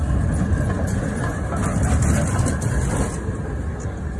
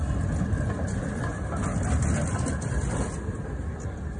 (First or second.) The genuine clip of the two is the first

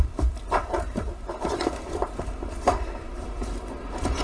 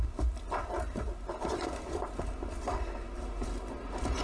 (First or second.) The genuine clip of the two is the second